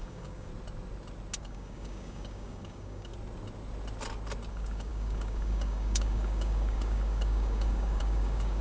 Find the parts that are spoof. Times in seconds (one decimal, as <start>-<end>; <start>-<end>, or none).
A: 0.0-0.5; 1.4-3.1; 4.5-8.6